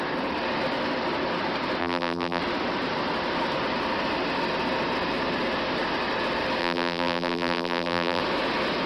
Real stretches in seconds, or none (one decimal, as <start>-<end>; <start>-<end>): 0.0-1.8; 2.4-6.6; 8.2-8.9